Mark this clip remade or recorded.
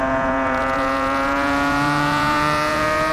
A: remade